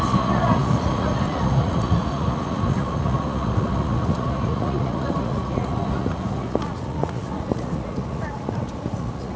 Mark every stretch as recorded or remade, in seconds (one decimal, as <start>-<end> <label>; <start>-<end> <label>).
0.0-9.4 remade